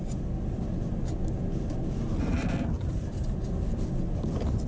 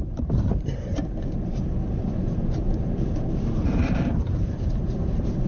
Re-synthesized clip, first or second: second